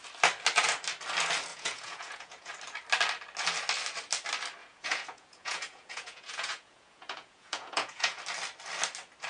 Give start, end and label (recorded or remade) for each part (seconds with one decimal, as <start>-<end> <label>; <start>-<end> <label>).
0.0-1.5 recorded; 1.5-2.5 remade; 2.5-4.6 recorded; 4.6-8.2 remade; 8.2-9.3 recorded